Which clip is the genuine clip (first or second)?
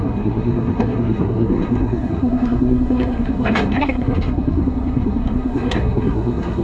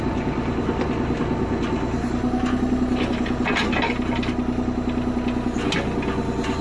second